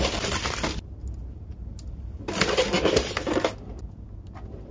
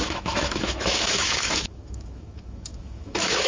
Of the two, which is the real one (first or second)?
first